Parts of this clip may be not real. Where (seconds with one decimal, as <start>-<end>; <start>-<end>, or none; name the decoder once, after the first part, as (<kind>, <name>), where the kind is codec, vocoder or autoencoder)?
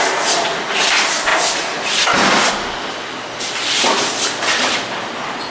none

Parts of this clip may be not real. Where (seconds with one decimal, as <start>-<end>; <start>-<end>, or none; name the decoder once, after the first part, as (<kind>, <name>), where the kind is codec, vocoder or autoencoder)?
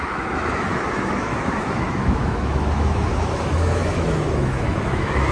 0.0-5.3 (autoencoder, DAC-VAE)